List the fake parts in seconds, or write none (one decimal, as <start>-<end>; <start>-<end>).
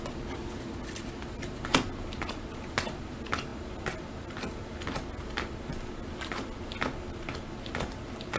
none